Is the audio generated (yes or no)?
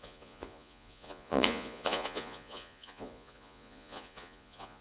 yes